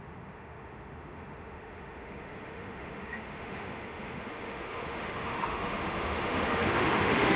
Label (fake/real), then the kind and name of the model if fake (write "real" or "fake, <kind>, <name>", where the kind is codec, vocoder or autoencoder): fake, autoencoder, DAC-VAE